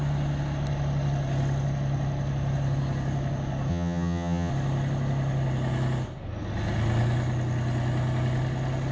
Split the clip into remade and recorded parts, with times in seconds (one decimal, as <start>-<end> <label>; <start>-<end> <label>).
0.0-3.7 recorded; 3.7-4.5 remade; 4.5-8.9 recorded